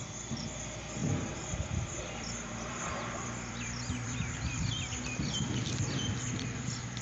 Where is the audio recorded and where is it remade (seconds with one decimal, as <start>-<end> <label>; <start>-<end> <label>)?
0.0-1.0 recorded; 1.0-4.7 remade; 4.7-7.0 recorded

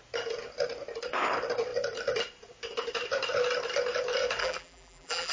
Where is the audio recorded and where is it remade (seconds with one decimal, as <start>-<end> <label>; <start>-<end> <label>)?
0.0-4.4 recorded; 4.4-5.3 remade

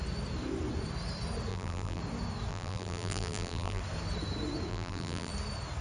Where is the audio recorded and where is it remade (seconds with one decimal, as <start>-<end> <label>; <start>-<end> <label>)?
0.0-1.5 recorded; 1.5-2.0 remade; 2.0-2.5 recorded; 2.5-3.8 remade; 3.8-4.7 recorded; 4.7-5.3 remade; 5.3-5.8 recorded

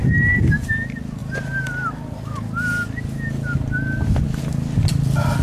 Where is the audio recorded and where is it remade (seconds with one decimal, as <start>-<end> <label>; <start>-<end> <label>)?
0.0-5.4 recorded